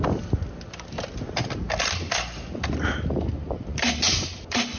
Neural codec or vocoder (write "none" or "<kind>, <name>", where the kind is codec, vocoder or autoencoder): none